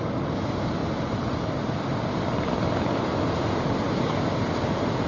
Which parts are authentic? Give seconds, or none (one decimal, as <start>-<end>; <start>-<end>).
0.0-0.8; 2.2-5.1